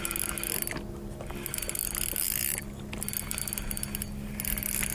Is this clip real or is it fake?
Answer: real